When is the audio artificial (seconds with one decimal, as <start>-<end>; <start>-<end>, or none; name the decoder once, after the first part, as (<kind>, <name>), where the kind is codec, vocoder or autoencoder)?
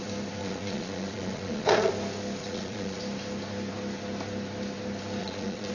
0.4-1.9 (vocoder, Vocos); 2.4-3.0; 5.2-5.7